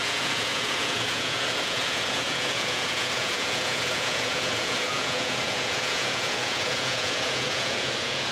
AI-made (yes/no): yes